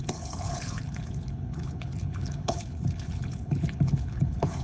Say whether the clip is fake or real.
fake